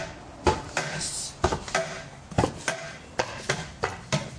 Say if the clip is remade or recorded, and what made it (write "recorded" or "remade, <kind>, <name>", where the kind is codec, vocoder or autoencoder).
recorded